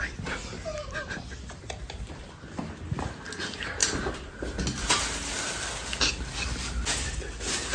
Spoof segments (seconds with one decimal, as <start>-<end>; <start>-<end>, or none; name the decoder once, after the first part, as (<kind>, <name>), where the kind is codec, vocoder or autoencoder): none